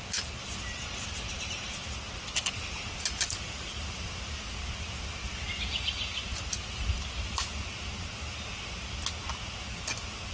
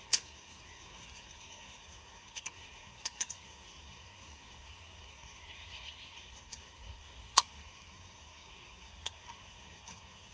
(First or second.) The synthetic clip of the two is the second